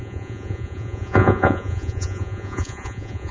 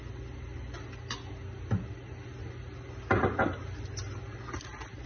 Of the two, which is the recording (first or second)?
second